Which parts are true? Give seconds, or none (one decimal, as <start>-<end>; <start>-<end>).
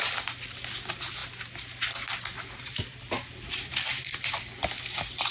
0.0-5.3